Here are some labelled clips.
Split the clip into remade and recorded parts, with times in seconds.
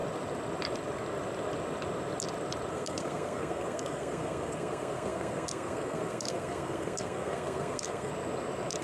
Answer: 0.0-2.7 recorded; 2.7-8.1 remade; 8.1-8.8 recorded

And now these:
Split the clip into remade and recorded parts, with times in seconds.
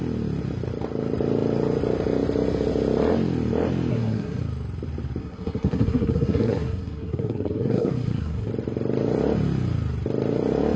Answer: 0.0-3.9 recorded; 3.9-4.4 remade; 4.4-5.2 recorded; 5.2-8.5 remade; 8.5-10.8 recorded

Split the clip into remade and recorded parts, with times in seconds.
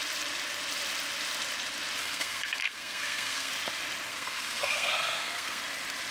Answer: 0.0-2.0 recorded; 2.0-3.5 remade; 3.5-4.1 recorded; 4.1-5.6 remade; 5.6-6.1 recorded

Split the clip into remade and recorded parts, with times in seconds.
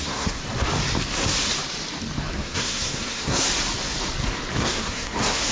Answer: 0.0-0.4 remade; 0.4-2.3 recorded; 2.3-3.5 remade; 3.5-4.6 recorded; 4.6-5.5 remade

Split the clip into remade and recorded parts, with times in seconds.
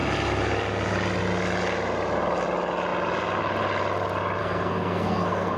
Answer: 0.0-4.4 recorded; 4.4-5.6 remade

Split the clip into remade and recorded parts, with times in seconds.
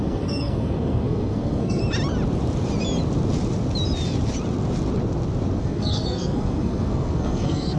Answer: 0.0-1.8 remade; 1.8-5.6 recorded; 5.6-7.8 remade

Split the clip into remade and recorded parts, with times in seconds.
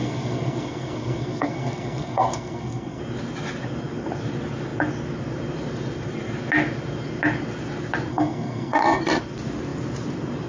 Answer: 0.0-3.0 remade; 3.0-8.1 recorded; 8.1-9.0 remade; 9.0-10.5 recorded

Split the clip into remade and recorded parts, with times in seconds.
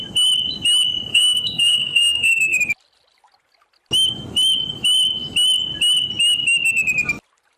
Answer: 0.0-1.1 recorded; 1.1-2.6 remade; 2.6-7.6 recorded